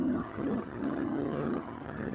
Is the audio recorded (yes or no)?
no